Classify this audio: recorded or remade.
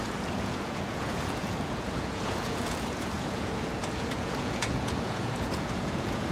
remade